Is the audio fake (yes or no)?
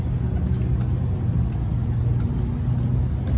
no